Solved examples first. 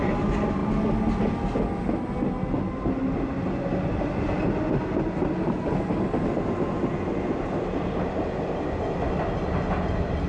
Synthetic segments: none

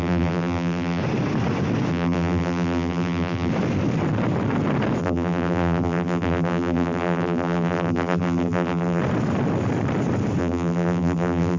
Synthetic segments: 0.0-1.0 (vocoder, BigVGAN v2); 1.9-3.5; 5.0-9.0; 10.4-11.6

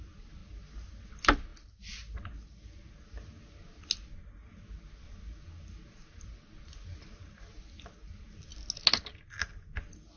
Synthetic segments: none

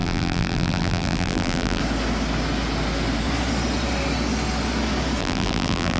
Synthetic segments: 0.0-1.8 (vocoder, BigVGAN v2); 5.2-6.0

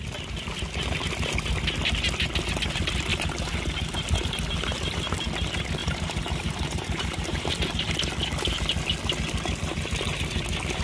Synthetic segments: 3.1-3.6 (vocoder, BigVGAN v2); 5.8-7.5

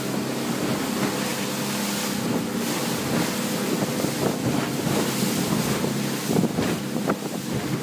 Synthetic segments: none

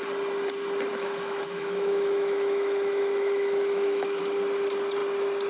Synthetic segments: 0.9-4.2 (autoencoder, DAC-VAE)